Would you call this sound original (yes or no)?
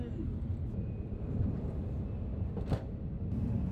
yes